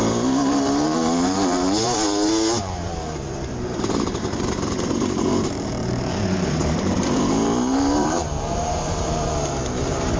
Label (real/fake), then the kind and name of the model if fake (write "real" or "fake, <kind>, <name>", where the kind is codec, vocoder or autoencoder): fake, vocoder, BigVGAN v2